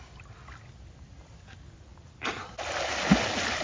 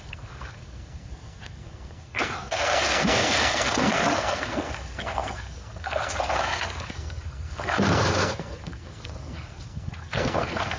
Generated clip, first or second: second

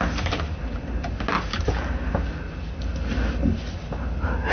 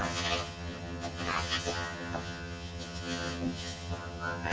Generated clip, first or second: second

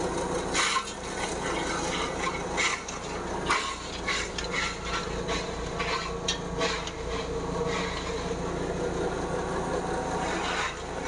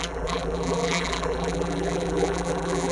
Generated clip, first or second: second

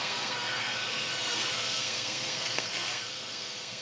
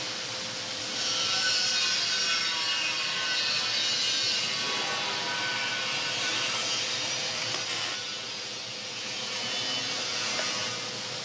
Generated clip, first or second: first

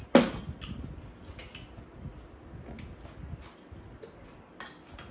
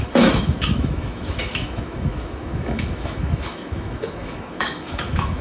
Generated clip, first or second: second